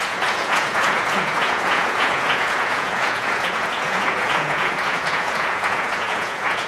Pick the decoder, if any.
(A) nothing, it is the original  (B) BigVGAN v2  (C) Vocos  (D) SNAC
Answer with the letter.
C